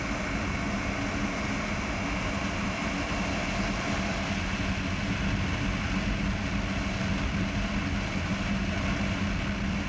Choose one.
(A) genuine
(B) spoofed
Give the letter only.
A